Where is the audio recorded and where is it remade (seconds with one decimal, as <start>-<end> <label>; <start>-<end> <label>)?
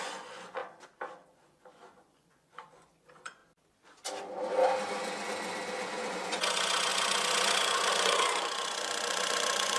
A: 0.0-0.6 remade; 0.6-1.3 recorded; 1.3-3.4 remade; 3.4-6.1 recorded; 6.1-9.8 remade